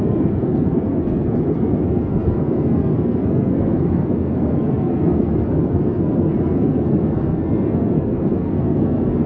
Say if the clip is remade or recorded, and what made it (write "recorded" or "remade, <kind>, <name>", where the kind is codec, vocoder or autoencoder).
remade, codec, SNAC